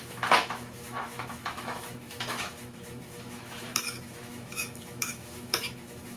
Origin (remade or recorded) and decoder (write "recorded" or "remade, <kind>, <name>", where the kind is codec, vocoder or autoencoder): remade, autoencoder, DAC-VAE